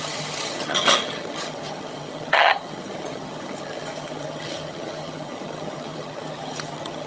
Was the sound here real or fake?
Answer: fake